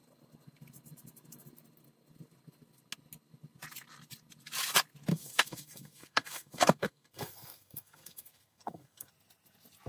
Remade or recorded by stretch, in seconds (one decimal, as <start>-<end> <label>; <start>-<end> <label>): 0.0-5.1 recorded; 5.1-9.1 remade; 9.1-9.9 recorded